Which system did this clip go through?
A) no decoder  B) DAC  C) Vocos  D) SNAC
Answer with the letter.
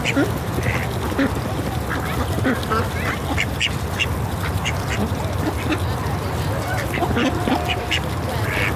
A